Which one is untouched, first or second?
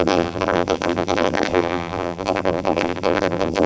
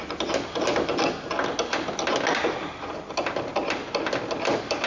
second